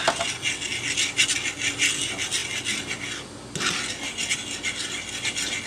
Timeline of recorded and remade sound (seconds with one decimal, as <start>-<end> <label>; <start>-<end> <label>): 0.0-5.7 recorded